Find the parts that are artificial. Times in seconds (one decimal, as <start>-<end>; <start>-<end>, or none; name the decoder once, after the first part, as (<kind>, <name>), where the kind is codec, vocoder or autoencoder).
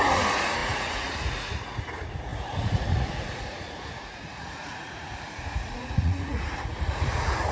0.0-7.5 (vocoder, Vocos)